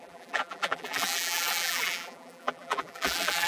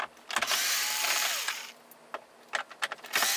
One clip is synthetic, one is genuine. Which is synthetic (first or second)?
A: first